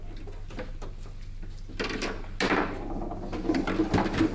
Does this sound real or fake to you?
real